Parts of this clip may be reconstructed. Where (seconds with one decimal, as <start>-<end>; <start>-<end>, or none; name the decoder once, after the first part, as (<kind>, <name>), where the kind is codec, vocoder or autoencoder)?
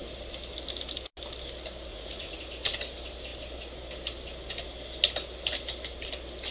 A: 1.9-2.4 (vocoder, Vocos)